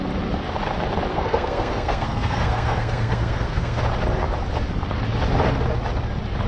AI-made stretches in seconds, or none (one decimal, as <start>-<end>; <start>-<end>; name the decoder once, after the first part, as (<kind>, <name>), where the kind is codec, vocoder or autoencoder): 1.1-3.8 (codec, SNAC)